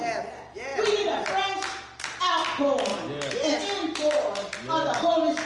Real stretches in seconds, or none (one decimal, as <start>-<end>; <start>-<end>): 0.0-0.7; 1.3-2.9; 3.6-5.5